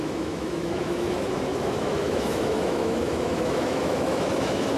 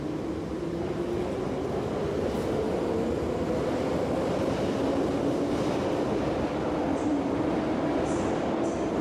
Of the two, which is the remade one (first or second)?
first